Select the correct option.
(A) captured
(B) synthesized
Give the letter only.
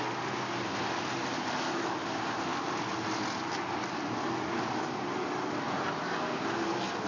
A